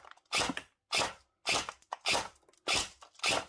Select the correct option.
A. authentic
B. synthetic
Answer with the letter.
A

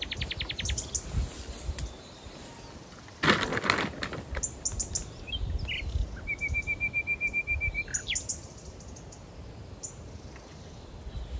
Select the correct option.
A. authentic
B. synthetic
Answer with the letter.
A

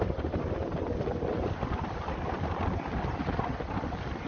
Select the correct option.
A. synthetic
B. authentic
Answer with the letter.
B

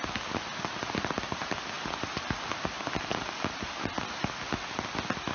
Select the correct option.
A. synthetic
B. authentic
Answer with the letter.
B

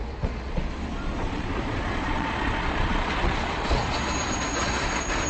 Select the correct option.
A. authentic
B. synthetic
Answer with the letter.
B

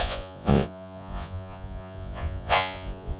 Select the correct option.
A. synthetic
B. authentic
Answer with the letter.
A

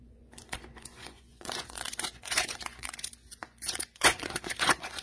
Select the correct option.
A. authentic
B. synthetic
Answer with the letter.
B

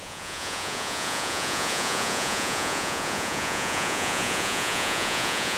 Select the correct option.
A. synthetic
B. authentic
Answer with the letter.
A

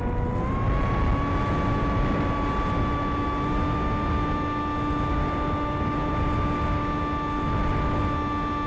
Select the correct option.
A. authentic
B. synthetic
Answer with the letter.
A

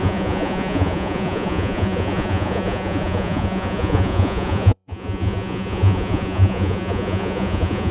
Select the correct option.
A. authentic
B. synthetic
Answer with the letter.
B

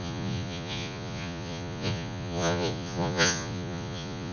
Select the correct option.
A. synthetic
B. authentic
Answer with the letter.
A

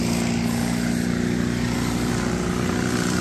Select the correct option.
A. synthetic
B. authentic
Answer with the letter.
B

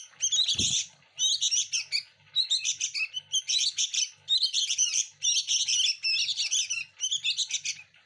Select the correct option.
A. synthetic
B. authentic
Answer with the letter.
B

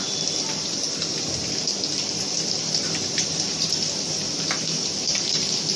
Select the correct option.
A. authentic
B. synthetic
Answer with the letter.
A